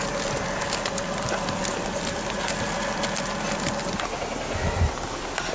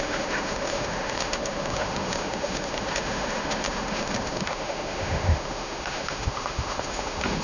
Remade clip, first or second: second